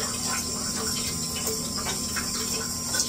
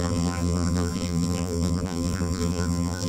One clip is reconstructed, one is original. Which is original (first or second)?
first